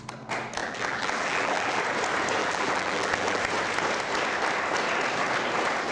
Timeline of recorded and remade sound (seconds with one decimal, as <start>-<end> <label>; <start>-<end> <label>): 0.0-0.6 recorded; 0.6-1.8 remade; 1.8-2.4 recorded; 2.4-3.4 remade; 3.4-5.9 recorded

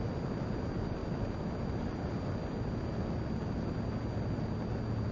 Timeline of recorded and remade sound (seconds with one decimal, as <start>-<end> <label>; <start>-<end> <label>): 0.0-5.1 recorded